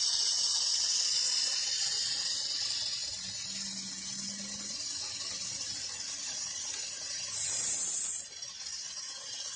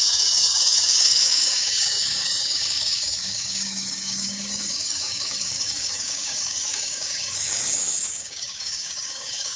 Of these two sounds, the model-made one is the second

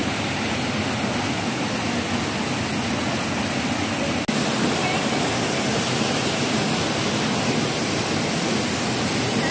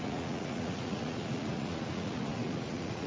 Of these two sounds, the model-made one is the second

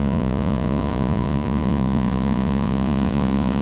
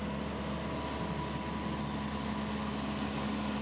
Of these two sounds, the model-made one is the first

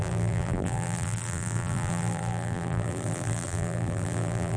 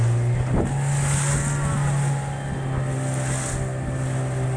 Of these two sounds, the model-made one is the first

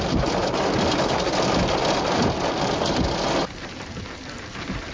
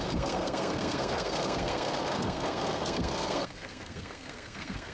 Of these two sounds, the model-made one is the second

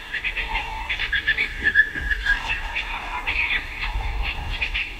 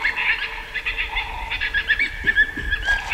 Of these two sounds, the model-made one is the first